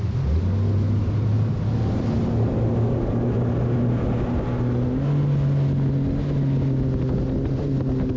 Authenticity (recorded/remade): recorded